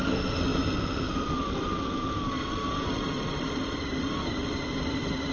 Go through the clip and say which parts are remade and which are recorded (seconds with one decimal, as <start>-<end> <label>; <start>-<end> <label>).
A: 0.0-5.3 recorded